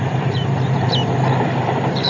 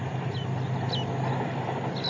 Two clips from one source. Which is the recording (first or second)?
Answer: second